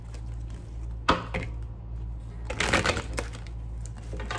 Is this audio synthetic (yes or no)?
no